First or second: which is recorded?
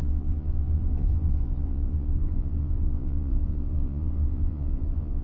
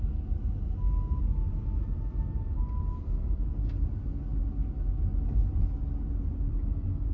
second